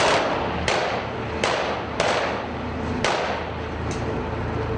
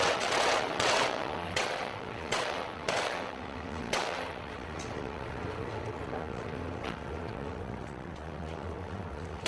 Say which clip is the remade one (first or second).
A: second